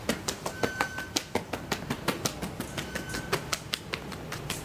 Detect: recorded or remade recorded